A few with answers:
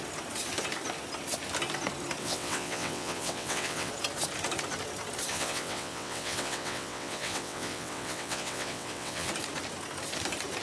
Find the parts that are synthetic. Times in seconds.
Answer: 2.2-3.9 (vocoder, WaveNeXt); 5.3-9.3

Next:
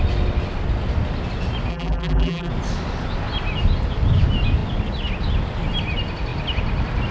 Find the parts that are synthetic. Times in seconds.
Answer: 1.7-2.5 (vocoder, BigVGAN v2)

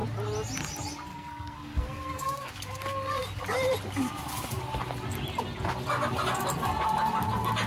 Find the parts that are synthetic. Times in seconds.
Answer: 1.1-2.5 (codec, SNAC)

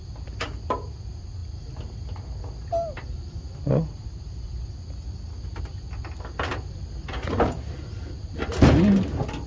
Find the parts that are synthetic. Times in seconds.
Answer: none